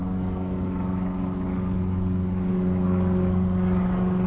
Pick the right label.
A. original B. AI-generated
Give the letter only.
B